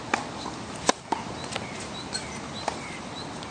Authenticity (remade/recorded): recorded